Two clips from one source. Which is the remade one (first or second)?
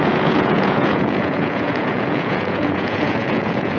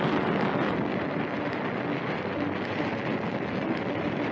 first